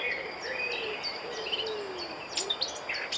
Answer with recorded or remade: recorded